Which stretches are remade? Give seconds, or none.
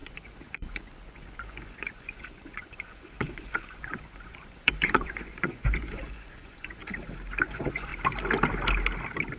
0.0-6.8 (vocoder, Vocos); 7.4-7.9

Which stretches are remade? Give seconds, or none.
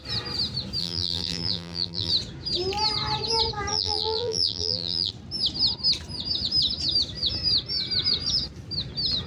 0.8-2.1 (vocoder, BigVGAN v2); 3.7-5.1